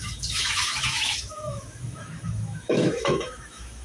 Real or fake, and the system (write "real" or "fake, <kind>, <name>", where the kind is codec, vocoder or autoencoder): fake, autoencoder, DAC-VAE